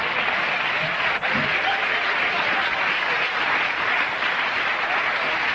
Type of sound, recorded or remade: recorded